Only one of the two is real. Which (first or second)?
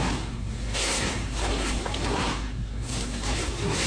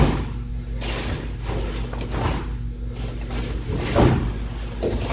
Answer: second